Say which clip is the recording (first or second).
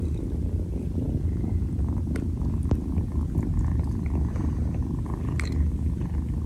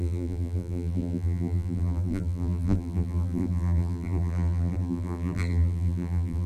first